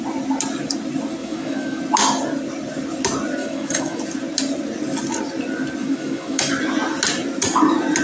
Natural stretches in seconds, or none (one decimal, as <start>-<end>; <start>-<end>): 0.0-1.2; 1.8-3.4; 4.0-5.8; 6.5-8.0